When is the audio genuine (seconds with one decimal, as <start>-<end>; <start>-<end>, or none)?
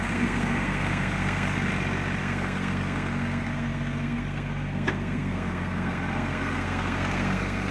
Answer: 1.7-2.2